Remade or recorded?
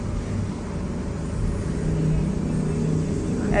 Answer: recorded